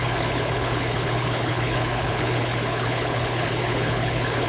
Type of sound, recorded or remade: remade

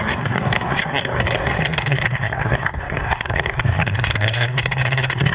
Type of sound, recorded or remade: remade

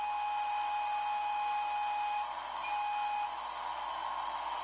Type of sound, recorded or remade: recorded